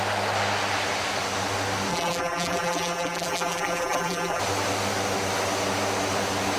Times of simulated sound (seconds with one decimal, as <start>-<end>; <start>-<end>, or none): 1.9-4.4